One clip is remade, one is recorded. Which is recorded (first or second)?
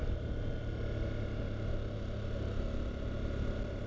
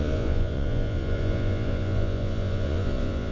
first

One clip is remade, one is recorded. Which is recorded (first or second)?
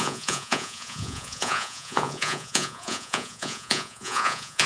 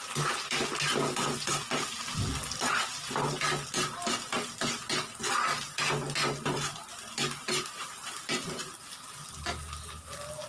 second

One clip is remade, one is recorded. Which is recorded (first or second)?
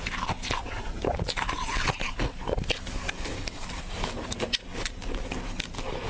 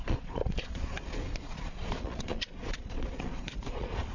first